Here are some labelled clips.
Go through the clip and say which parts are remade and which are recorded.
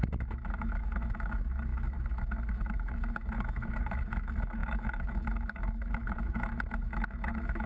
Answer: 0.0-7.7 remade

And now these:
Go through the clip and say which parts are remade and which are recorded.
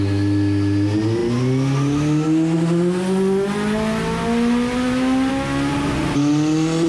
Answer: 0.0-6.9 recorded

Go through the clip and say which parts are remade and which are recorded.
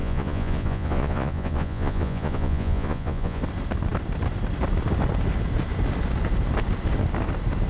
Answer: 0.0-3.4 remade; 3.4-7.7 recorded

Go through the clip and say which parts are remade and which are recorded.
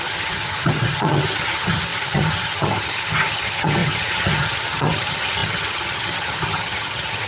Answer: 0.0-7.3 remade